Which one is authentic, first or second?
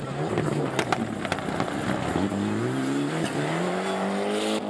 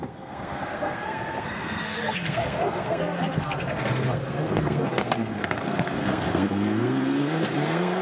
first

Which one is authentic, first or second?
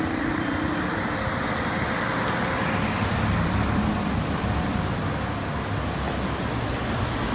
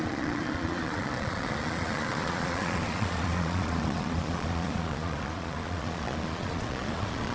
first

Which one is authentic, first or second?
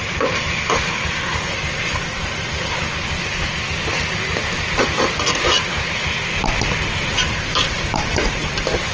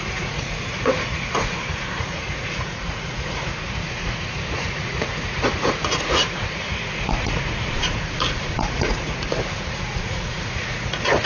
first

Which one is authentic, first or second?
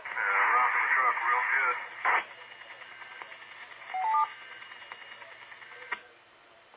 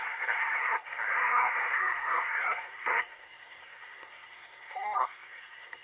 first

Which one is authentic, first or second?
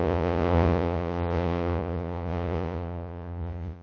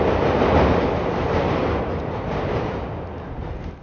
second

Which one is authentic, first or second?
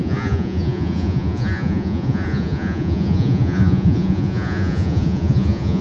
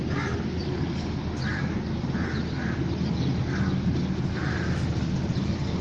second